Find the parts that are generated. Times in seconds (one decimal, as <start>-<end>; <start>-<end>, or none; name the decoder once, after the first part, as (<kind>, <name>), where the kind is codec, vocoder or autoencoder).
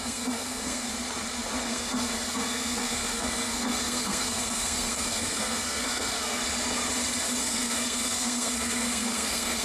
0.0-0.9 (codec, SNAC); 1.6-6.4; 7.4-9.6